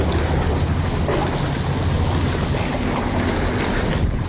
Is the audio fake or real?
real